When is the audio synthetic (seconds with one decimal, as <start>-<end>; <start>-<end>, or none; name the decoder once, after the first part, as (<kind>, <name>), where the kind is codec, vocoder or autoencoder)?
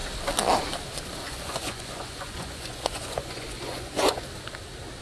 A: 1.2-4.2 (vocoder, Vocos)